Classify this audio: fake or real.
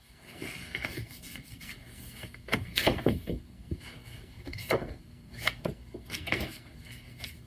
fake